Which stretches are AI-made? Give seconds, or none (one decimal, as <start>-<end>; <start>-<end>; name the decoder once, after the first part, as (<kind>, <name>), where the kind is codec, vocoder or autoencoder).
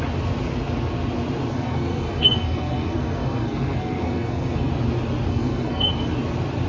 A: 1.5-4.7 (codec, SNAC); 5.3-5.9